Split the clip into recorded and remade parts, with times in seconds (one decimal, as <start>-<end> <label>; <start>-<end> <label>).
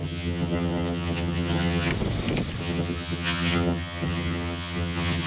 0.0-1.9 remade; 1.9-2.6 recorded; 2.6-5.3 remade